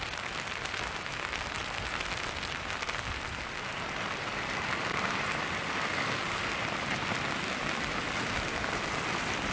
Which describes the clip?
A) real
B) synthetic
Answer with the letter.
A